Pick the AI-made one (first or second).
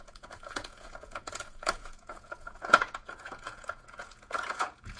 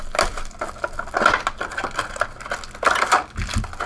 first